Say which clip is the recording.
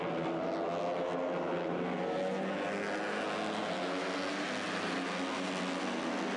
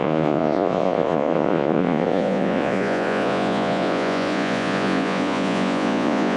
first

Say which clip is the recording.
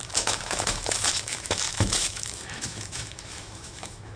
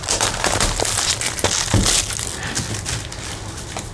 second